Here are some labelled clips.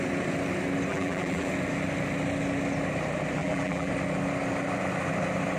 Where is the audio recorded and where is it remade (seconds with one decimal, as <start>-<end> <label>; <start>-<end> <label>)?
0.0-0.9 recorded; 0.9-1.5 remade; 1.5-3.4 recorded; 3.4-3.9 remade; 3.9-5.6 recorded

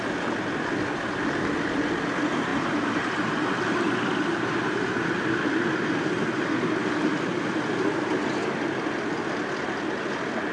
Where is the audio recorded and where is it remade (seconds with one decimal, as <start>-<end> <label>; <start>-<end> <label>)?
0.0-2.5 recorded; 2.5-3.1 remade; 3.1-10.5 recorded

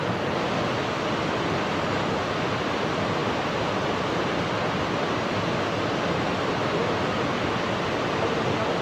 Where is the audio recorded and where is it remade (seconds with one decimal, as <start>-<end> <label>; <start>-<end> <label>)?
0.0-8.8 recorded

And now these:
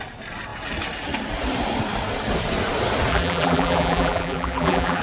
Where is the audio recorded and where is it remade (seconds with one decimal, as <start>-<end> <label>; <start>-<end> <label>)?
0.0-3.1 recorded; 3.1-5.0 remade

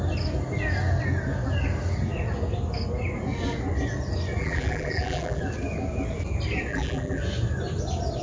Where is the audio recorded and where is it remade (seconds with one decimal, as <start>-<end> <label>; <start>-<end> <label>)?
0.0-4.4 recorded; 4.4-5.4 remade; 5.4-6.7 recorded; 6.7-7.2 remade; 7.2-8.2 recorded

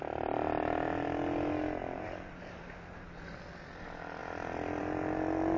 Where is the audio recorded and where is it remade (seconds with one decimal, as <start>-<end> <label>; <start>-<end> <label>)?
0.0-1.8 recorded; 1.8-2.6 remade; 2.6-5.6 recorded

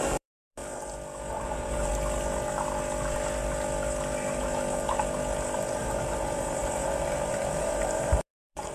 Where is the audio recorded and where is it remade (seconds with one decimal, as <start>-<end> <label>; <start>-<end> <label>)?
0.0-0.6 remade; 0.6-1.3 recorded; 1.3-1.9 remade; 1.9-5.8 recorded; 5.8-8.7 remade

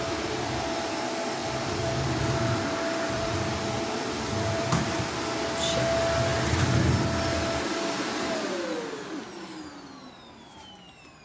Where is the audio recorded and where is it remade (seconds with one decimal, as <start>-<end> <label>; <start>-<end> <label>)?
0.0-1.4 recorded; 1.4-5.0 remade; 5.0-11.2 recorded